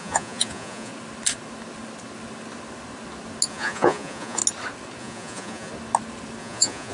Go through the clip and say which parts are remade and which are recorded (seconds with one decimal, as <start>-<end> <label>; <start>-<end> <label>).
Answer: 0.0-0.9 remade; 0.9-3.5 recorded; 3.5-4.4 remade; 4.4-5.0 recorded; 5.0-5.7 remade; 5.7-6.4 recorded; 6.4-6.9 remade